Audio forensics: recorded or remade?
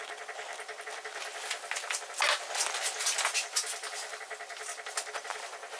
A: recorded